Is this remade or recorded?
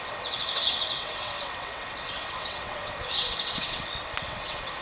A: remade